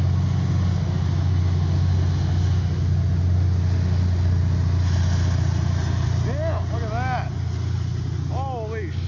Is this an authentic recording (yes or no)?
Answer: yes